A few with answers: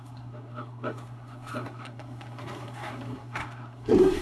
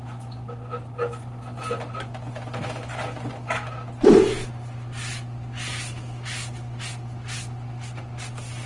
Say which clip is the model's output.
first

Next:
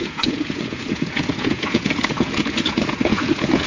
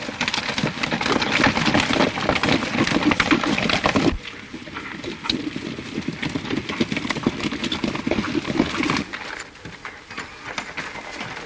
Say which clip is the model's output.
first